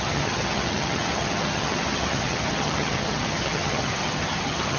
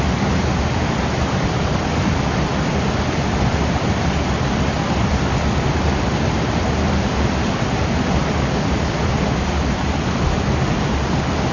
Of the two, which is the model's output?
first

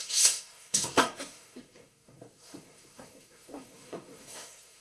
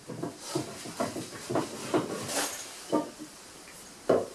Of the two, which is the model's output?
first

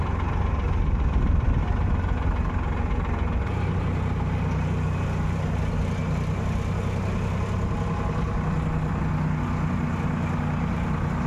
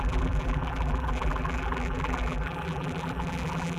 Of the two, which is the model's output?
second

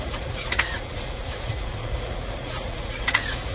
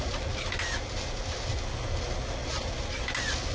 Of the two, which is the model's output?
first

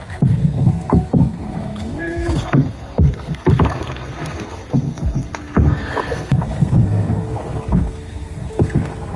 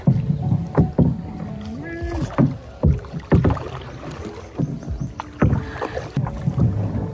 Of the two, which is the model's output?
first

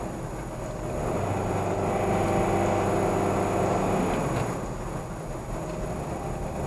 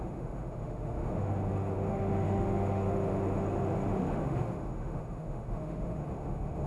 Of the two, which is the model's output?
second